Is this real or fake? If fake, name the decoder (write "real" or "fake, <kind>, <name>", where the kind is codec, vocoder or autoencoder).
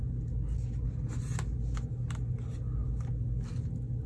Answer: real